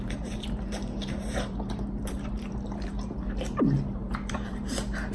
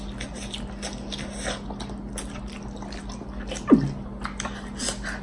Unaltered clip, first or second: second